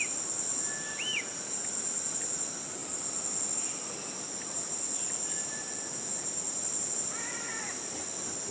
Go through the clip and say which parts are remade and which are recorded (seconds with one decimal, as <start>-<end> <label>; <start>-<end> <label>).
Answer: 0.0-8.5 recorded